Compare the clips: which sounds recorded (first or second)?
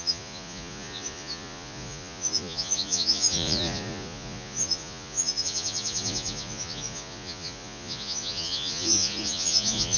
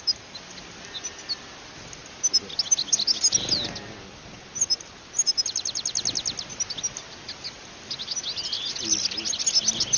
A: second